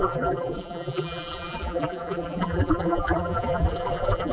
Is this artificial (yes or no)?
yes